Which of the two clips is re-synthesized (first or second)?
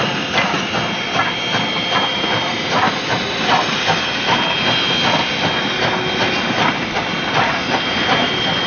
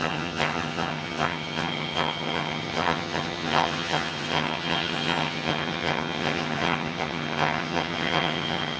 second